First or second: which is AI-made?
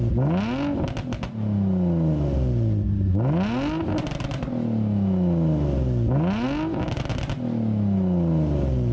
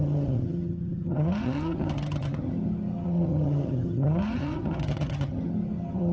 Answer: second